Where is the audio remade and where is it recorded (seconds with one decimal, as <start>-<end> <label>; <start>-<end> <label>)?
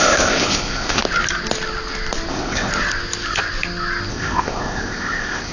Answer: 0.0-1.0 remade; 1.0-2.3 recorded; 2.3-2.7 remade; 2.7-4.1 recorded; 4.1-5.5 remade